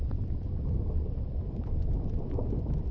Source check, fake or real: real